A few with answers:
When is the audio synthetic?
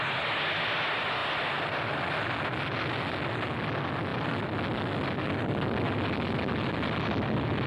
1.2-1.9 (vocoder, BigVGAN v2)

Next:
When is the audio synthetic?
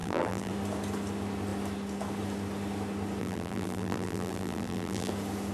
0.0-0.5 (vocoder, BigVGAN v2); 3.2-5.1